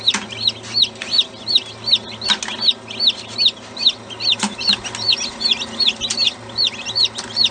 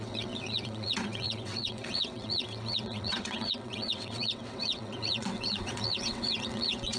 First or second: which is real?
first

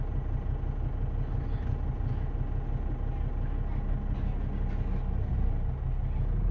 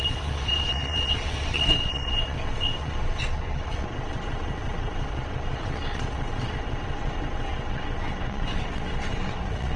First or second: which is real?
first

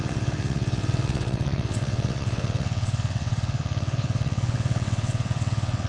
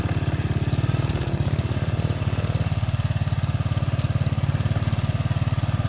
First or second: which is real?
second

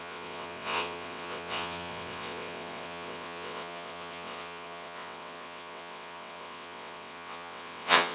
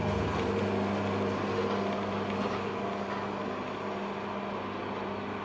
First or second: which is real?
second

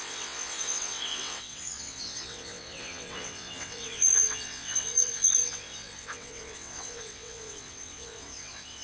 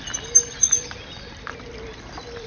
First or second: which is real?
second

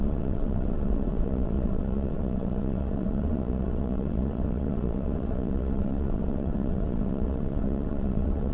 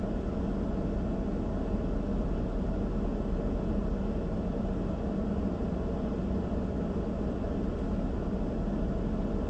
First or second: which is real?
second